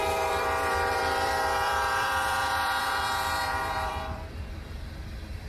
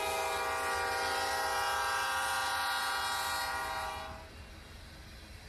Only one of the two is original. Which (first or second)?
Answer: second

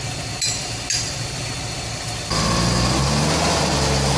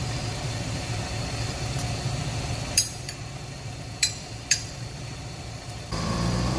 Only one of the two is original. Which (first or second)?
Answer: first